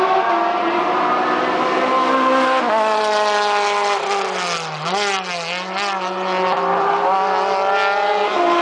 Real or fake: real